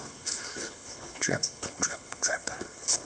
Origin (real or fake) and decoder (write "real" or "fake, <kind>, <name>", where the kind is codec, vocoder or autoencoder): fake, codec, HILCodec